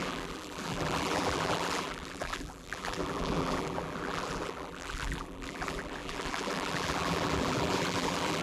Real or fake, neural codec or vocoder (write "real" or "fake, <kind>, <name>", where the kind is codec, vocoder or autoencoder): fake, vocoder, BigVGAN v2